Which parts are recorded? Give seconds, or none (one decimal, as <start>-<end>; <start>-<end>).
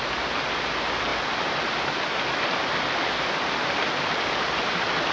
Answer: 0.0-5.1